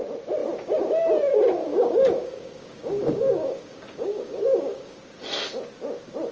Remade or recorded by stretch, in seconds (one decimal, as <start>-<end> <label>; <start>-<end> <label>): 0.0-1.6 recorded; 1.6-5.0 remade; 5.0-6.3 recorded